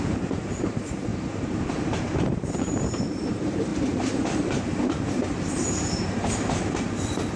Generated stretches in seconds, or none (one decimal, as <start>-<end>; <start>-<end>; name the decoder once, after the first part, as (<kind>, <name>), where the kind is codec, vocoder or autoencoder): 0.0-7.4 (vocoder, BigVGAN v2)